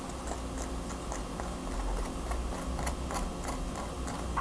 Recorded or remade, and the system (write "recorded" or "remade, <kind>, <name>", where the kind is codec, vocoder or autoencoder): recorded